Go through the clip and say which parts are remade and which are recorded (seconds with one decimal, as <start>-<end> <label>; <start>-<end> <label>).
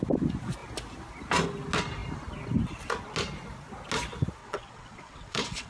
0.0-4.4 recorded; 4.4-5.7 remade